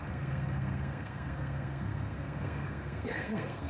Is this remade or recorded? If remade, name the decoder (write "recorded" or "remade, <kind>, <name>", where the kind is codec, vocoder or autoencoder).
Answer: remade, codec, SNAC